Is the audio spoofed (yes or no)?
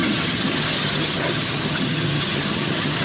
yes